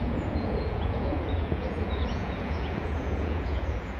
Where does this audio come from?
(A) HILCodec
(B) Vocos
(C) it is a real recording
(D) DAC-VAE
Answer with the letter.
B